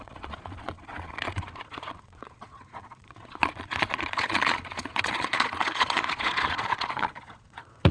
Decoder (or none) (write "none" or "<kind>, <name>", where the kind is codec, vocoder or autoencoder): vocoder, Vocos